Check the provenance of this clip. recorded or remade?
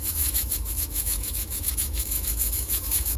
remade